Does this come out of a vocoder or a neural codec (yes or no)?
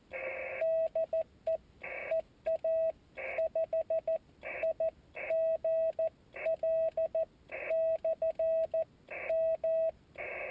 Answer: no